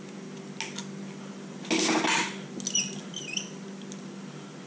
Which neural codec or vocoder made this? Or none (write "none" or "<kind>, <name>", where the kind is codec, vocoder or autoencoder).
none